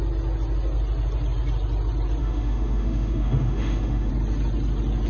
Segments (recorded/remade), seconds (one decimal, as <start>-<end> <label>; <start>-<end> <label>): 0.0-2.2 recorded; 2.2-4.1 remade; 4.1-5.1 recorded